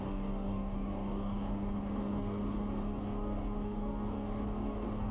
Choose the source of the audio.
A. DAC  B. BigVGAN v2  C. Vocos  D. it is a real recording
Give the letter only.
A